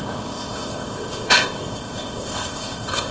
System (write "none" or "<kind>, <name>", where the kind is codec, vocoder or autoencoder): codec, ZipCodec